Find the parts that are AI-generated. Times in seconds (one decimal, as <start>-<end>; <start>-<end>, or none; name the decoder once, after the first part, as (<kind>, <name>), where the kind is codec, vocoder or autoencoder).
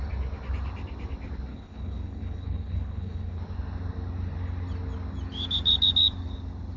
1.5-3.4 (codec, HILCodec)